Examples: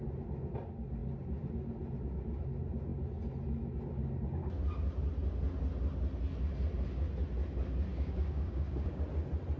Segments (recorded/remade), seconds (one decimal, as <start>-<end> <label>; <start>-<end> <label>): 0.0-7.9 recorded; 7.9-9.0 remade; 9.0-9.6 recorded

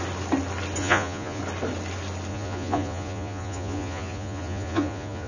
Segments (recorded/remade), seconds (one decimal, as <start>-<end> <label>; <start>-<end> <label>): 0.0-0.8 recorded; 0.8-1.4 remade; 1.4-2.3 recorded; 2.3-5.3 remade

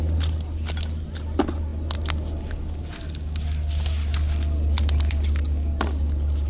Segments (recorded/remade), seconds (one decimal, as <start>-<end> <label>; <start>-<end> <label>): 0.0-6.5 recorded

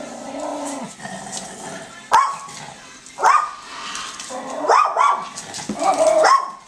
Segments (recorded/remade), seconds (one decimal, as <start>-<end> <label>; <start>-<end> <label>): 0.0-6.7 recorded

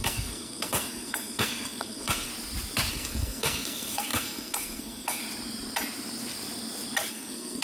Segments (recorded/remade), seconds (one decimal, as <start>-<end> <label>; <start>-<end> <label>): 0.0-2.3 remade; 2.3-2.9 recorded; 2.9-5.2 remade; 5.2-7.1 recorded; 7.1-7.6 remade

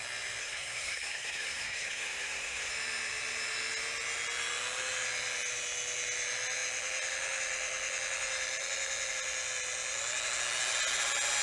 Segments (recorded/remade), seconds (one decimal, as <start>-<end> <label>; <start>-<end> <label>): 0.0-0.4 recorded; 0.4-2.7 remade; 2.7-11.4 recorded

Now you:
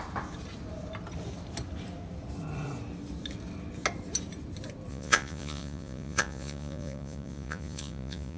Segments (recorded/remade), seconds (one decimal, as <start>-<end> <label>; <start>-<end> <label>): 0.0-4.9 recorded; 4.9-8.4 remade

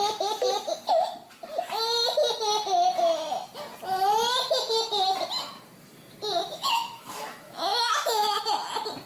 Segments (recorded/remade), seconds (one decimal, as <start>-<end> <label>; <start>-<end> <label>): 0.0-6.4 recorded; 6.4-8.4 remade; 8.4-9.1 recorded